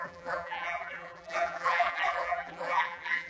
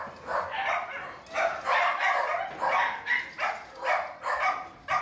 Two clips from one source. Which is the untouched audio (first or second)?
second